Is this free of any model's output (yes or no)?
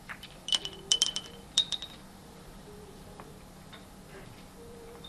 no